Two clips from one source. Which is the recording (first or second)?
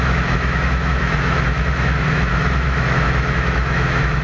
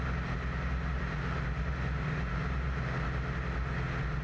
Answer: second